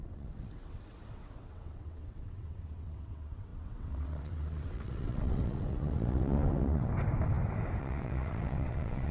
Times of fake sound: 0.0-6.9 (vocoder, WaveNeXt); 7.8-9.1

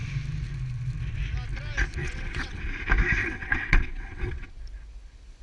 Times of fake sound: 2.0-2.6 (vocoder, WaveNeXt); 3.2-4.5

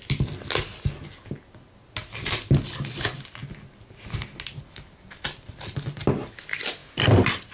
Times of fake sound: none

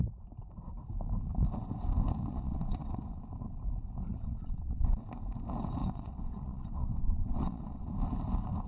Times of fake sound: 2.3-3.0 (vocoder, WaveNeXt); 4.1-5.1; 5.8-7.8

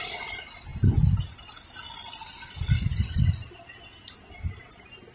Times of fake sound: none

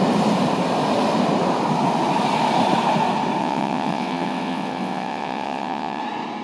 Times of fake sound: 3.4-6.0 (vocoder, WaveNeXt)

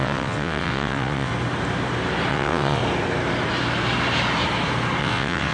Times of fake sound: 0.0-1.3 (vocoder, WaveNeXt); 2.3-2.8; 5.0-5.5

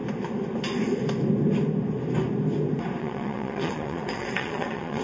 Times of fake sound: 3.0-5.0 (vocoder, WaveNeXt)